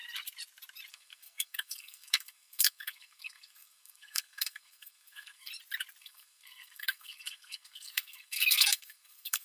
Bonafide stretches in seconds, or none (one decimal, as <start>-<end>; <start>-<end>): 0.0-0.9; 5.5-6.0